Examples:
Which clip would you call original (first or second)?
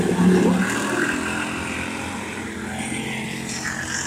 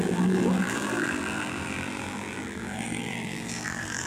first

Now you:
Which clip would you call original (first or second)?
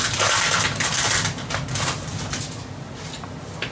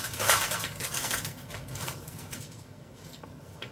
first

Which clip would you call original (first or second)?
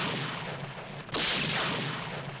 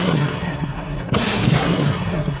first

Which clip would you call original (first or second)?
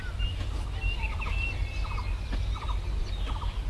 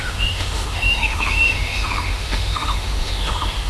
first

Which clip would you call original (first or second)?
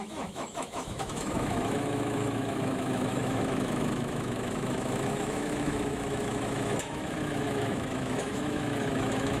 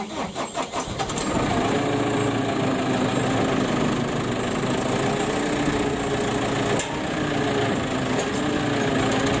second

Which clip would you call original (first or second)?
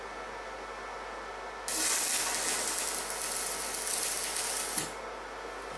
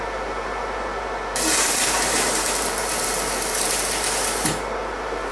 first